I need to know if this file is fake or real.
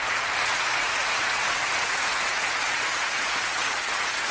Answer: fake